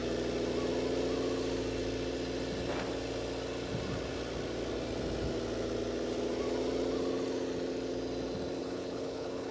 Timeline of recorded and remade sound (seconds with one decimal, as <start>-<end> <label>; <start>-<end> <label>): 0.0-8.6 recorded; 8.6-9.5 remade